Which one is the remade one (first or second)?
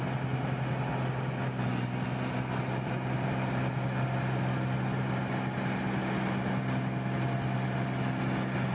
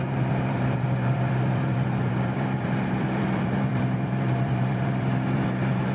second